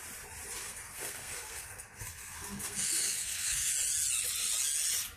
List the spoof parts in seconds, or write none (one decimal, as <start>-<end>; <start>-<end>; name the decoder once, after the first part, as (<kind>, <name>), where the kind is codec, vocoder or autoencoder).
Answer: 0.6-3.7 (codec, SNAC)

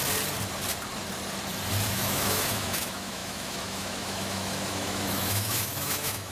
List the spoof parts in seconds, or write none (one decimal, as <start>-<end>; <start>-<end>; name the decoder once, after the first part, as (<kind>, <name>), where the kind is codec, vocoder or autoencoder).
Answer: 1.9-6.3 (autoencoder, DAC-VAE)

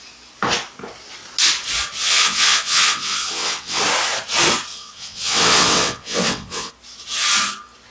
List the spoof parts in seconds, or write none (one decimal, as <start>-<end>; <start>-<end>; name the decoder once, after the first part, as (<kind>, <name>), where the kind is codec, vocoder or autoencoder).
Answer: 2.0-3.8 (vocoder, WaveNeXt); 4.7-6.7